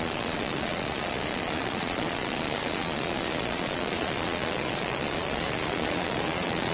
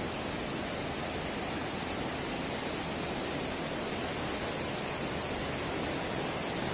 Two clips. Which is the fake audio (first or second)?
first